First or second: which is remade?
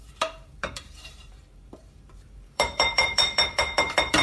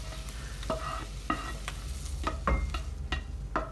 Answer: first